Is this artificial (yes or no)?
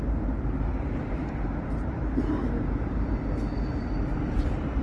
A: yes